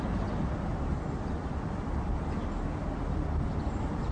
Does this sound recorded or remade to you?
recorded